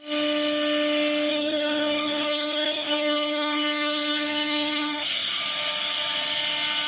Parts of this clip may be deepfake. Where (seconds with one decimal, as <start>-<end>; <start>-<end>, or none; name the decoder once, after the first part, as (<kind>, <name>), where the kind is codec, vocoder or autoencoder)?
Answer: 1.3-5.4 (codec, SNAC)